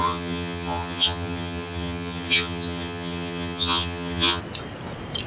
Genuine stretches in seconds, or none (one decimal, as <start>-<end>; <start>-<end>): 4.4-5.3